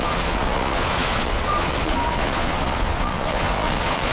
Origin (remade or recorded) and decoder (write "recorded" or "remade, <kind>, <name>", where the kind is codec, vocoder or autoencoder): remade, vocoder, Vocos